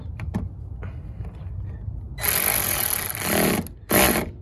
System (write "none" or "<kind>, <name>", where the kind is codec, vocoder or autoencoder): none